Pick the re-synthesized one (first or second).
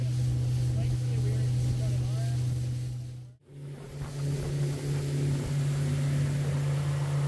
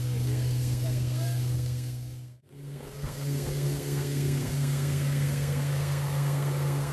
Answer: second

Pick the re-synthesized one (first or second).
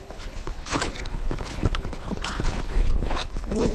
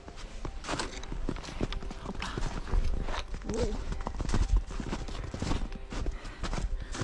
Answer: first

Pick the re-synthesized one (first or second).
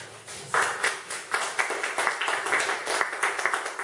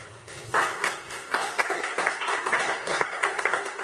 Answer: second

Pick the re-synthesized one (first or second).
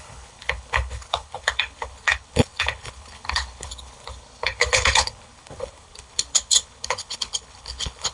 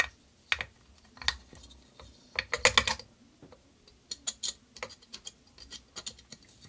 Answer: first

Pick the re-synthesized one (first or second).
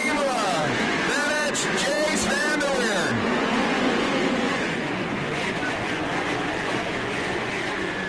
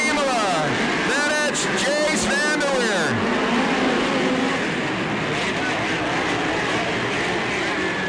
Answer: first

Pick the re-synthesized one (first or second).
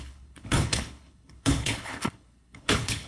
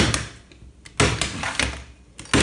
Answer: first